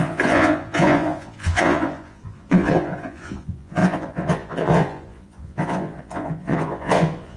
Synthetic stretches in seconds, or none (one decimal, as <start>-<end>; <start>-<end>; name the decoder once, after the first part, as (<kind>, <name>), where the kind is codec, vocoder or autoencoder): 0.0-7.4 (vocoder, Vocos)